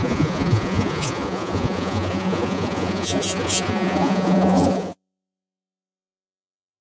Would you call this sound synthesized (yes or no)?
yes